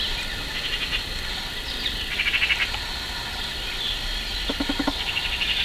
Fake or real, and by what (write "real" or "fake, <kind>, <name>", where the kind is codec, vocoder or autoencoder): real